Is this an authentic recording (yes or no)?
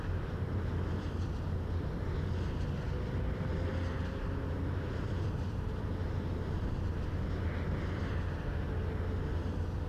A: yes